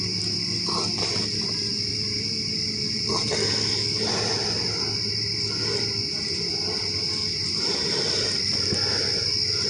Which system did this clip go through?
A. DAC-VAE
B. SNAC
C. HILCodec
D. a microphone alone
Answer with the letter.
D